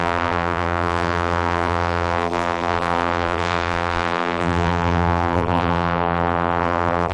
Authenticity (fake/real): fake